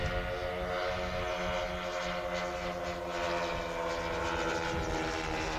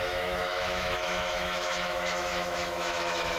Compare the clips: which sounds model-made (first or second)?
second